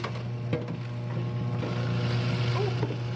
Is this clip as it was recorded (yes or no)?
yes